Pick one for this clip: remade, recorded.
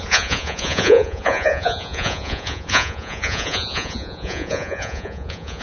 remade